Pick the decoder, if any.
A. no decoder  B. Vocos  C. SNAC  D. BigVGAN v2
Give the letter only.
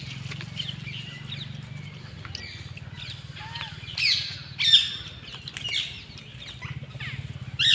A